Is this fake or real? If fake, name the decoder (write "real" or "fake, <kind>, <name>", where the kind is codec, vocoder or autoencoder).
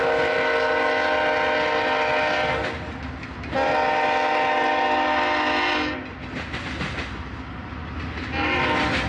real